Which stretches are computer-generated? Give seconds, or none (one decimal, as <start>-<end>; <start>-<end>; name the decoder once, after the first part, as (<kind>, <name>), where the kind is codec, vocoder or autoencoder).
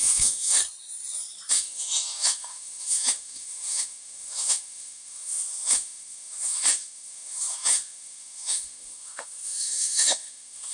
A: 0.0-0.6 (autoencoder, DAC-VAE); 1.5-10.7